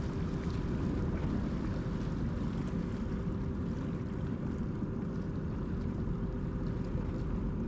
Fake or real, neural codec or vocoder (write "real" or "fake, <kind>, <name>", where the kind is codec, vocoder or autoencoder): real